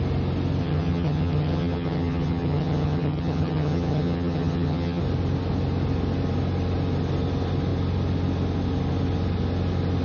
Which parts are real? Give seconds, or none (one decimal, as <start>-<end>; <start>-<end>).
0.0-0.6; 5.0-10.0